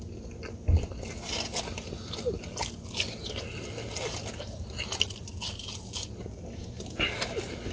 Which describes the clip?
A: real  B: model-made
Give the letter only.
A